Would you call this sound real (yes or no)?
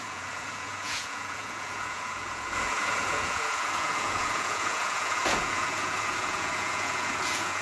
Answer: no